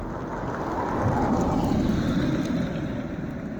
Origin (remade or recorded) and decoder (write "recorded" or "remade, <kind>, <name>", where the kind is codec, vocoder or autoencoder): recorded